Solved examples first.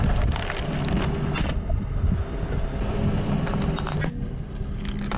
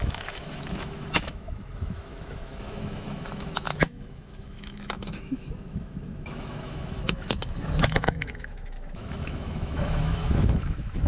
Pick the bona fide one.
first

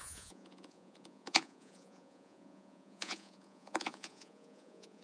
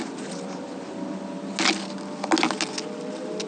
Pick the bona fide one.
second